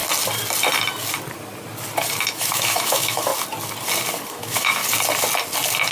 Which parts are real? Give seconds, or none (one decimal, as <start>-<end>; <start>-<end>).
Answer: 0.0-2.3; 3.3-4.3; 4.8-5.9